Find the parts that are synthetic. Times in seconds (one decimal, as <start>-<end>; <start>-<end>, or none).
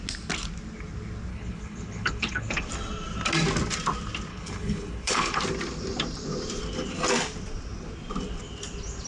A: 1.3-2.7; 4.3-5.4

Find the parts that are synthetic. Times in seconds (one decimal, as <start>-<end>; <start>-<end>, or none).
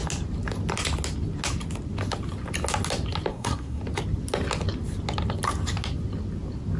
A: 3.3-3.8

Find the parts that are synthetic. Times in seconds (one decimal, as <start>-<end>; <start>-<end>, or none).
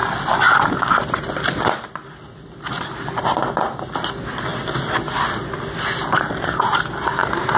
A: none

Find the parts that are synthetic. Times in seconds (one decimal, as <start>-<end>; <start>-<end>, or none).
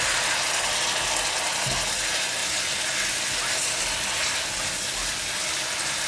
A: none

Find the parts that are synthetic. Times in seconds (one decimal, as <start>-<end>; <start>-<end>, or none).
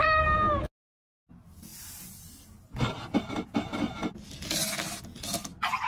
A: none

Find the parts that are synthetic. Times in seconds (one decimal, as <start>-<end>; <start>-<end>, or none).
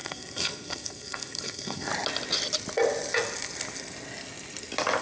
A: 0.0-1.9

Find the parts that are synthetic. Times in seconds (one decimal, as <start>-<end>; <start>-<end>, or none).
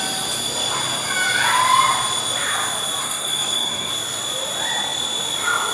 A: 3.0-3.9